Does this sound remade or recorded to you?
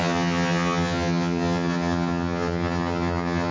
remade